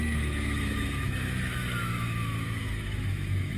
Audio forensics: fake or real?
fake